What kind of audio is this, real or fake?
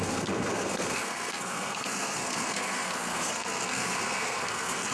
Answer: fake